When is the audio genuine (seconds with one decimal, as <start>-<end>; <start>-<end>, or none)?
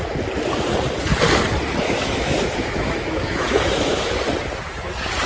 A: 0.0-1.8; 4.1-5.3